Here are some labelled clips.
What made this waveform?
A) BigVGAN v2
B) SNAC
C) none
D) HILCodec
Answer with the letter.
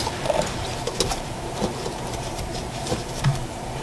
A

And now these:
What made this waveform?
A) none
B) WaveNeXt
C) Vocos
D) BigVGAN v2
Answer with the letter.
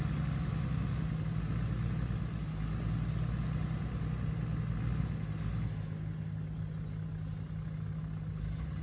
A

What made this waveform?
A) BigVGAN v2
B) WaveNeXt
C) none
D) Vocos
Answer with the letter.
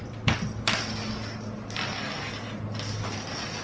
A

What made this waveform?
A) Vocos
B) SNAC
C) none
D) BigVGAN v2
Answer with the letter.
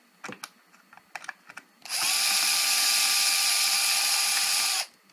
C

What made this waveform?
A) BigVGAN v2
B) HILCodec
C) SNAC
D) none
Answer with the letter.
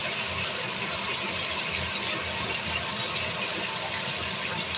D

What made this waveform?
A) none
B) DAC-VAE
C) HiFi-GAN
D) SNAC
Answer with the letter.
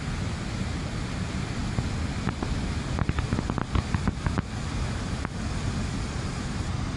A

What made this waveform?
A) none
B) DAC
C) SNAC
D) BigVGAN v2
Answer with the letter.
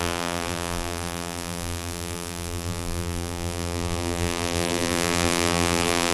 D